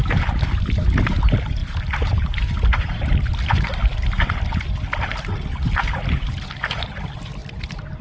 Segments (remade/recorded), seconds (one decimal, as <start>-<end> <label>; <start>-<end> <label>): 0.0-8.0 recorded